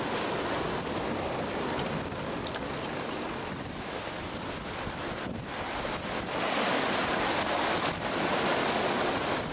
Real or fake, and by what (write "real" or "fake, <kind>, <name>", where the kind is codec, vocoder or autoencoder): real